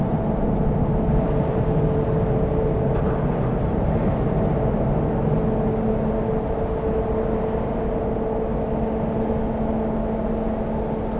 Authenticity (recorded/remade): recorded